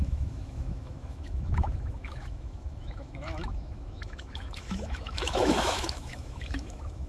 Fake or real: fake